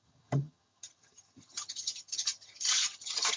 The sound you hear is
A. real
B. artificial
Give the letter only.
B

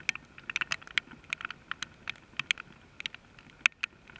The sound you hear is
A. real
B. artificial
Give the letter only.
A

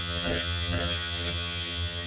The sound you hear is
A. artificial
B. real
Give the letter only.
A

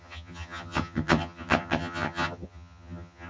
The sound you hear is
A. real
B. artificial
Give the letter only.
B